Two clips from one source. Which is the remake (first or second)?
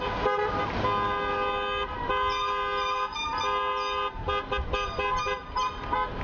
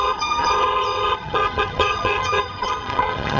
second